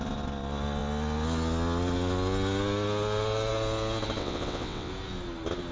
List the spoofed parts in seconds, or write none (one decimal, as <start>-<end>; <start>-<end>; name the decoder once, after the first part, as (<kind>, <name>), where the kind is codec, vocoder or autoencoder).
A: 4.2-4.9 (vocoder, WaveNeXt)